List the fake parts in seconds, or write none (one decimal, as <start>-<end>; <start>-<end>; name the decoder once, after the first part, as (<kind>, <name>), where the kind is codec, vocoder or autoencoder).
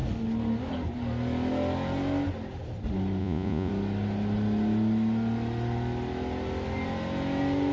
3.2-3.7 (vocoder, Vocos)